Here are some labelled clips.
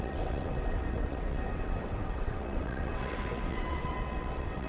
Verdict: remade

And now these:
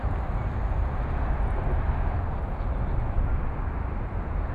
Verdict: recorded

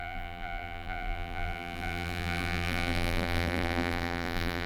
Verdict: remade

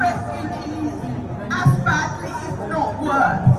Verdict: recorded